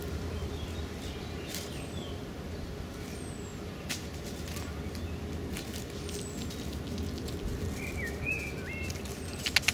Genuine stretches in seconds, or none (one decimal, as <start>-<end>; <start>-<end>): 2.2-7.5; 8.3-9.7